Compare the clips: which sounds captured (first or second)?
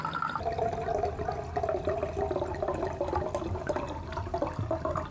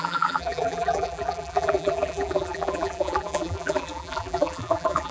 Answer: first